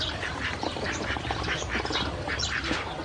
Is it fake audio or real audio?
fake